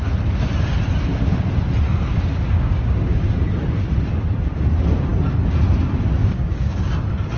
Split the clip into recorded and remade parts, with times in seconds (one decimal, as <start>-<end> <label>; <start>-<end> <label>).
0.0-2.1 recorded; 2.1-3.2 remade; 3.2-6.2 recorded; 6.2-6.9 remade; 6.9-7.4 recorded